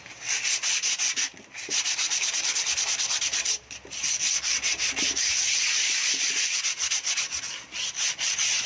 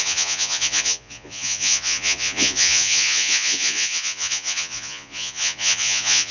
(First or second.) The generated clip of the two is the second